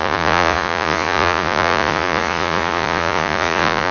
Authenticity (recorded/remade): remade